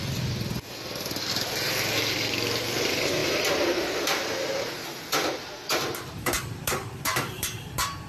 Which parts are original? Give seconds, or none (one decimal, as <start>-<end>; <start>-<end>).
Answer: 0.0-3.2